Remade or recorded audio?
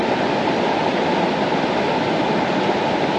recorded